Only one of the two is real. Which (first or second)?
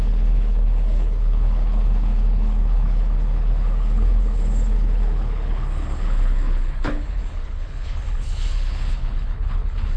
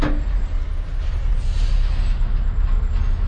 second